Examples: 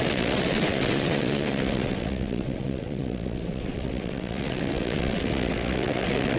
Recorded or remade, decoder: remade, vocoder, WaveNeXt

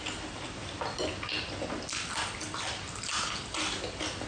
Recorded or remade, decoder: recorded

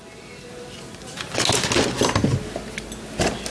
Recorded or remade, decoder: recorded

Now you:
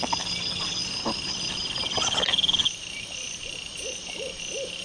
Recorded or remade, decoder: recorded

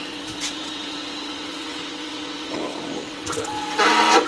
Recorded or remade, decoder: remade, vocoder, WaveNeXt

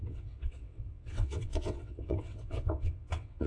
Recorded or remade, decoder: remade, vocoder, WaveNeXt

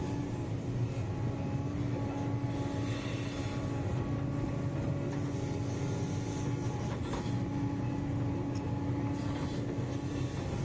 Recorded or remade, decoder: recorded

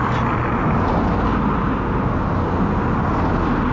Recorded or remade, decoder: recorded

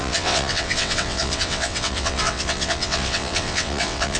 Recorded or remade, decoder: remade, vocoder, WaveNeXt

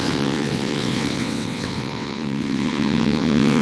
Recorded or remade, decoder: remade, vocoder, WaveNeXt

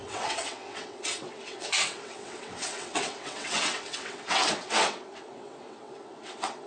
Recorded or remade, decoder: remade, vocoder, WaveNeXt